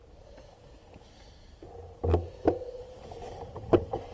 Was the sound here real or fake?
real